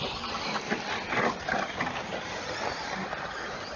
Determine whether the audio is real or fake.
real